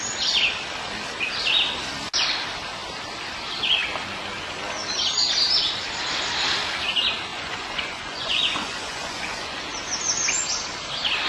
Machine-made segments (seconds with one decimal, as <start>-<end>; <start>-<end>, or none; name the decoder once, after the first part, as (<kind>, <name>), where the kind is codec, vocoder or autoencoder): 7.3-9.6 (vocoder, Vocos)